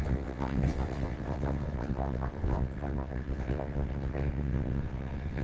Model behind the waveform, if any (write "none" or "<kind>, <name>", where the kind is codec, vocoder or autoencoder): vocoder, WaveNeXt